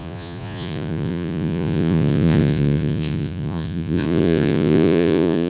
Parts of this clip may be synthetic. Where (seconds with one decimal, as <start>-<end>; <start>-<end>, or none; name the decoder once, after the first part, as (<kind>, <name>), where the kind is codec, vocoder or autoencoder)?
0.0-5.5 (vocoder, Vocos)